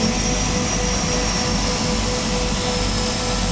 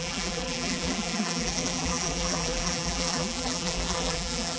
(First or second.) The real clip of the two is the first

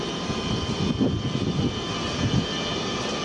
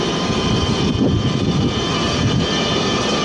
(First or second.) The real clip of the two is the first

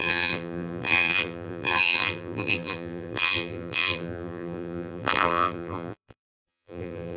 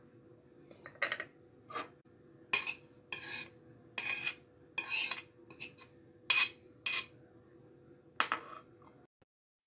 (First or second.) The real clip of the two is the second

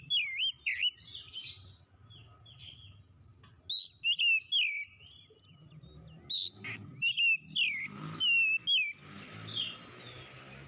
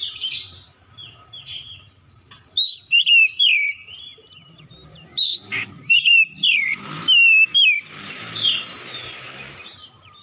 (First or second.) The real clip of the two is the first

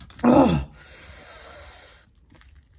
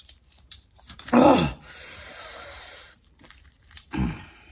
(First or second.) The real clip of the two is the first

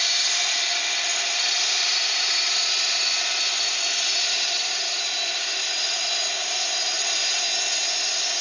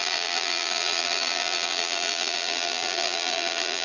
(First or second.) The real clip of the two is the first